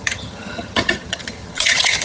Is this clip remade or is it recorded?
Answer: remade